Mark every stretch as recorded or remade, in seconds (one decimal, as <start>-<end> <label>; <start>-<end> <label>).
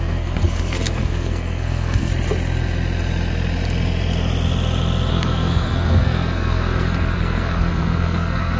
0.0-2.1 remade; 2.1-5.1 recorded; 5.1-8.6 remade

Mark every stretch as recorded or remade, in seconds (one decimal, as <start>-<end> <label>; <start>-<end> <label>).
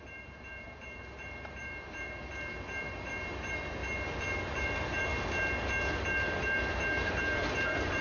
0.0-3.8 remade; 3.8-4.4 recorded; 4.4-5.1 remade; 5.1-5.8 recorded; 5.8-8.0 remade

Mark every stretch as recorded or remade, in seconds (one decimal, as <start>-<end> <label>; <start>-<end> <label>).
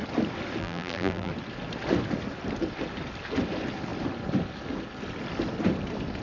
0.0-0.6 recorded; 0.6-1.3 remade; 1.3-6.2 recorded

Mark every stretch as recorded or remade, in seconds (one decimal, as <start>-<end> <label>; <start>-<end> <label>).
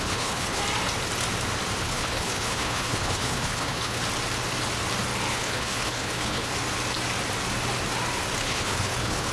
0.0-0.6 remade; 0.6-1.8 recorded; 1.8-4.0 remade; 4.0-5.3 recorded; 5.3-6.5 remade; 6.5-8.4 recorded; 8.4-9.3 remade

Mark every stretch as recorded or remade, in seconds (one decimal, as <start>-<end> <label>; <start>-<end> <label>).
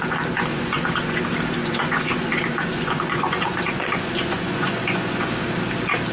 0.0-0.5 recorded; 0.5-1.2 remade; 1.2-1.6 recorded; 1.6-5.3 remade; 5.3-6.1 recorded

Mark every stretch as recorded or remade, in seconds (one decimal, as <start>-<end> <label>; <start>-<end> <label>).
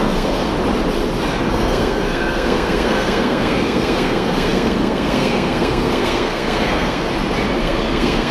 0.0-0.5 remade; 0.5-1.5 recorded; 1.5-7.1 remade; 7.1-7.6 recorded; 7.6-8.3 remade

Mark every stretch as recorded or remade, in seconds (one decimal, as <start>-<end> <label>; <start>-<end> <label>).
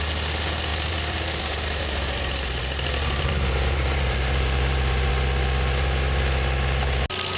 0.0-0.7 recorded; 0.7-5.1 remade; 5.1-7.4 recorded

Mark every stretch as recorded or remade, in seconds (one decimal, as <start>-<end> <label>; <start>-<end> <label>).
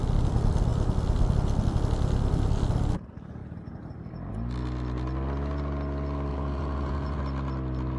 0.0-6.3 recorded; 6.3-7.2 remade; 7.2-8.0 recorded